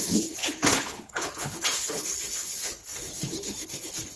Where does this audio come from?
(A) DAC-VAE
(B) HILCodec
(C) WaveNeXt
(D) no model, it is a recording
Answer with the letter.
B